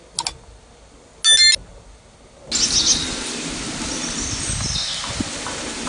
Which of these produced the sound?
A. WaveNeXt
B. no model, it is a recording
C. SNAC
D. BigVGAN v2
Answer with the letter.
B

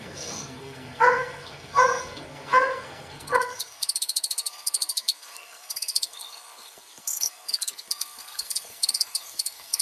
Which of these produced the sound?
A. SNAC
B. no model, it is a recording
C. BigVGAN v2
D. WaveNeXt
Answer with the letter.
A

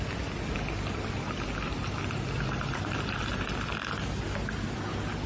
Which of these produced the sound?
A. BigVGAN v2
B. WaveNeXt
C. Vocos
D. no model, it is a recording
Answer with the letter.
D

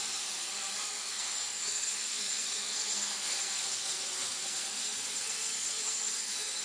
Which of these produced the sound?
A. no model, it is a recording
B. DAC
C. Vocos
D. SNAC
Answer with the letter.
D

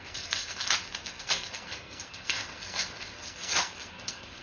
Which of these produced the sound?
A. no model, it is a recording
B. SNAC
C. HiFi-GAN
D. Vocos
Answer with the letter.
B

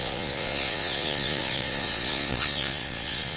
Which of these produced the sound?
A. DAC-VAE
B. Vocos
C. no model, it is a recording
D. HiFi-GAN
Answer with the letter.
B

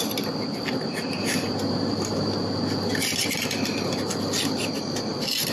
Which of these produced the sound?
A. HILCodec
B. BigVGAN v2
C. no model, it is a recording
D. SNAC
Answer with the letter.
C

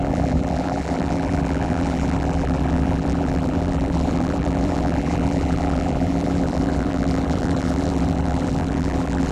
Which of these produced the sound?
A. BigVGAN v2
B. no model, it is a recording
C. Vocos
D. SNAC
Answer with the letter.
A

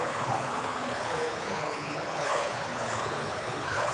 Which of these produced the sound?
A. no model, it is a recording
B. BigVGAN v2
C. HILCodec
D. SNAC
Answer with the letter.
C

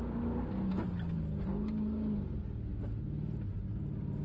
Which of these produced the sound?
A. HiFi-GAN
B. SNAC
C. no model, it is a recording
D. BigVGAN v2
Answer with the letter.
C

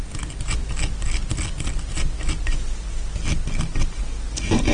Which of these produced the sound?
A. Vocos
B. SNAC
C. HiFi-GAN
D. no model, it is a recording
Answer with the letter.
D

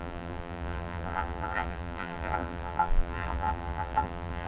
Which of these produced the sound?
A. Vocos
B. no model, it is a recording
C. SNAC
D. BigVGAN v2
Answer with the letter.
D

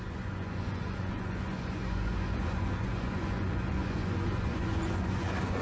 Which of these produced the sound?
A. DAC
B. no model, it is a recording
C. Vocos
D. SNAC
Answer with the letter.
C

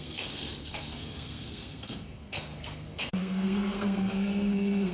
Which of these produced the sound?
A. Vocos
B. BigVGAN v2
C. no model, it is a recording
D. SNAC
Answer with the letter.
D